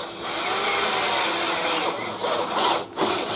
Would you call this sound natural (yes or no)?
yes